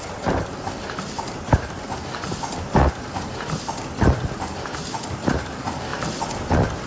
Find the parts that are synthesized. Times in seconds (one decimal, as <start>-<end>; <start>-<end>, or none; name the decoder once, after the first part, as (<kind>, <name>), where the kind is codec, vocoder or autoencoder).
none